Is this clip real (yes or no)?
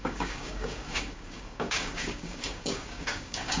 no